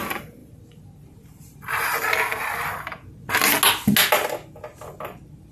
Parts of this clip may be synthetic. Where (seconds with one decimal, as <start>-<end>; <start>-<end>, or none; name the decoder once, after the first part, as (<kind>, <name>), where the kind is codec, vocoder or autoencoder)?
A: 0.4-1.1 (vocoder, BigVGAN v2)